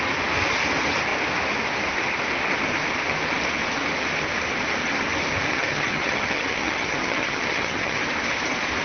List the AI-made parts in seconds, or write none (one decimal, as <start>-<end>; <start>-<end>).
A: 5.5-8.0